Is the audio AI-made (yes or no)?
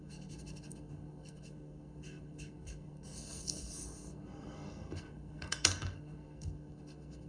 yes